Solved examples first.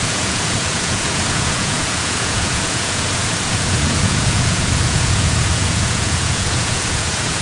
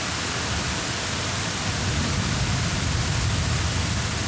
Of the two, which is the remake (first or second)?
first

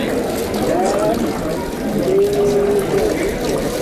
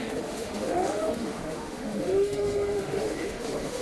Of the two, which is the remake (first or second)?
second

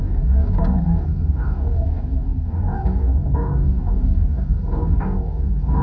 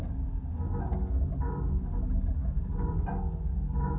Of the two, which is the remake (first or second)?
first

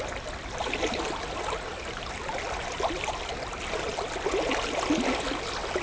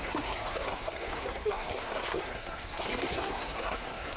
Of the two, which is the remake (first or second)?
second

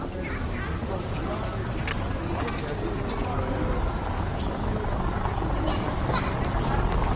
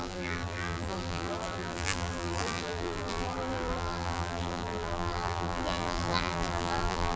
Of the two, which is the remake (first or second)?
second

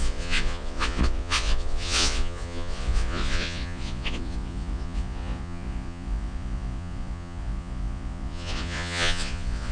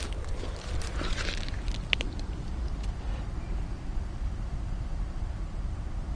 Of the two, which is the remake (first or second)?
first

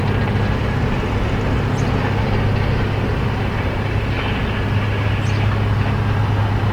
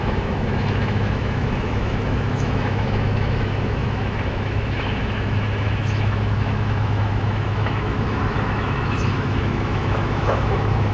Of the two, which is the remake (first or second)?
second